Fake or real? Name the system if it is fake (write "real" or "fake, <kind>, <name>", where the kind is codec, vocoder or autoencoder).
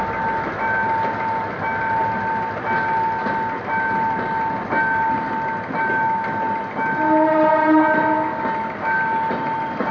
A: real